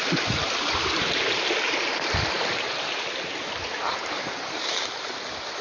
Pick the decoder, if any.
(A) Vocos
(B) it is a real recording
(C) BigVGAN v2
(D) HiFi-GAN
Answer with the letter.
C